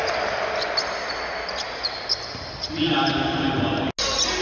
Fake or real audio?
real